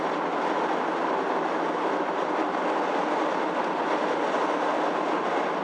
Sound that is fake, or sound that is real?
real